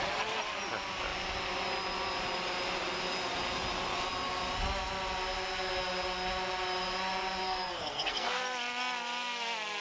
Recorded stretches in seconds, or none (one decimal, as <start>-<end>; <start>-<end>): 0.0-7.4; 8.4-9.8